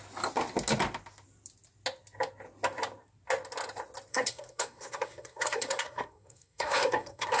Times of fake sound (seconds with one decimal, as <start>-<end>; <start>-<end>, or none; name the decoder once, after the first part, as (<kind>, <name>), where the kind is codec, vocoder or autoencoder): 4.1-7.4 (codec, SNAC)